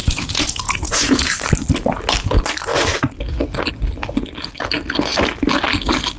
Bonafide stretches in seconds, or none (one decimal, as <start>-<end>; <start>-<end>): 1.3-6.2